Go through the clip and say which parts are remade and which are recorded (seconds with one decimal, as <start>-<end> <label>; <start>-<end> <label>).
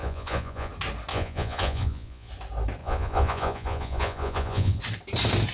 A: 0.0-0.7 remade; 0.7-1.1 recorded; 1.1-2.3 remade; 2.3-2.8 recorded; 2.8-4.8 remade; 4.8-5.5 recorded